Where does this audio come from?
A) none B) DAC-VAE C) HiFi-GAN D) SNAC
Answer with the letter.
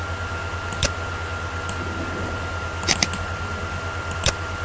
A